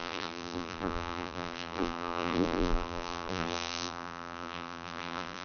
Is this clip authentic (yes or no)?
no